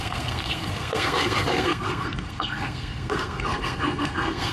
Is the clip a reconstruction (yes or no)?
yes